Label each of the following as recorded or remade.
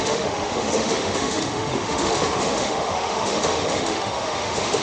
remade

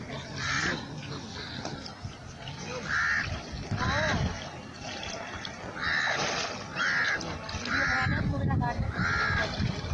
recorded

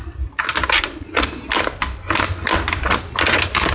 recorded